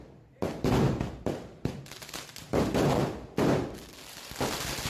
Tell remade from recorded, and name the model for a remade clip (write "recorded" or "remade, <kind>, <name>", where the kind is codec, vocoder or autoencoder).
recorded